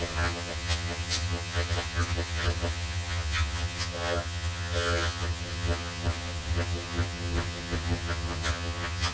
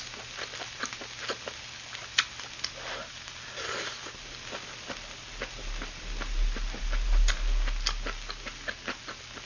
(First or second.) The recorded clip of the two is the second